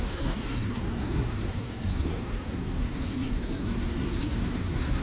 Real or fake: fake